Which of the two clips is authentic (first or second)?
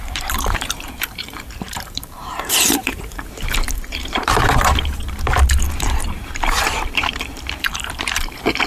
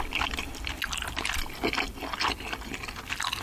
second